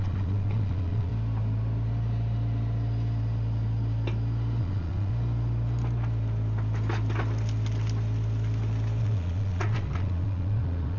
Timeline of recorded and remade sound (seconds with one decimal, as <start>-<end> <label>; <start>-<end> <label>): 0.0-1.1 remade; 1.1-4.6 recorded; 4.6-5.1 remade; 5.1-9.0 recorded; 9.0-11.0 remade